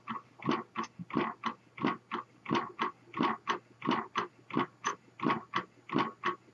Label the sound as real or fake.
real